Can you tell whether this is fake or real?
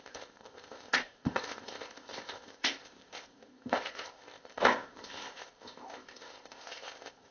fake